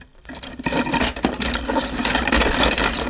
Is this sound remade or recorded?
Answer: recorded